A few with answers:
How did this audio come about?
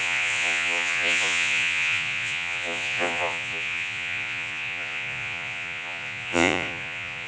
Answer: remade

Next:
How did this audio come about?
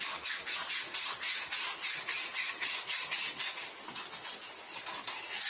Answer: recorded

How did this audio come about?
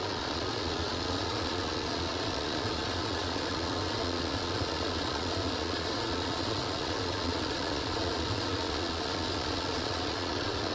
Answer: remade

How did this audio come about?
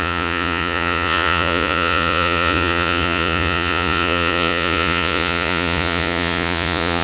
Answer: remade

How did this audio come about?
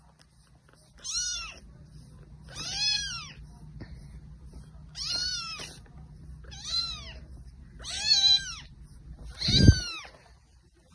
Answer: recorded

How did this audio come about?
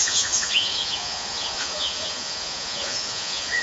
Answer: remade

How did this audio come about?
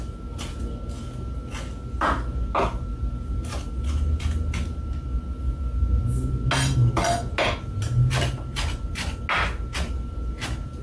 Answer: recorded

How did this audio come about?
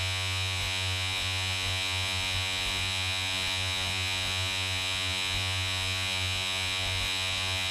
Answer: remade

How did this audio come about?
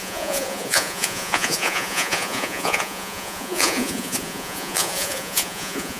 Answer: remade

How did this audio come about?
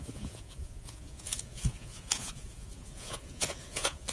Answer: remade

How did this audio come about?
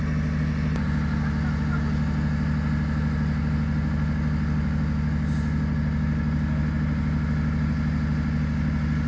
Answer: recorded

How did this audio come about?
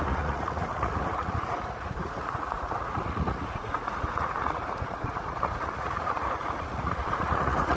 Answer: remade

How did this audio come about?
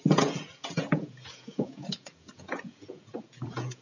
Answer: remade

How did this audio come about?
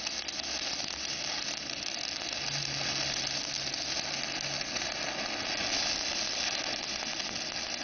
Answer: recorded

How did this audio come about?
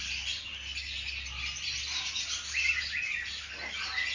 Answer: recorded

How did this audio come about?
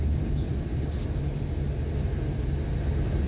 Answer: recorded